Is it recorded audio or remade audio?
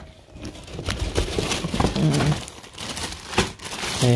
recorded